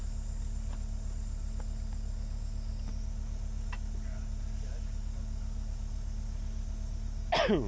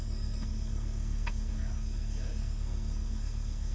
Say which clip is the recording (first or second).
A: first